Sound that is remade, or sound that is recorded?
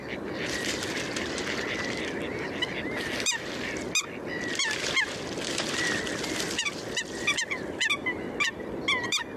recorded